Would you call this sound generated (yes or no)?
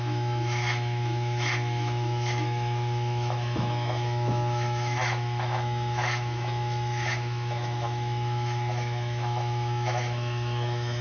yes